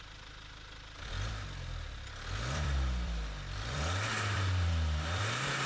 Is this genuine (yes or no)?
no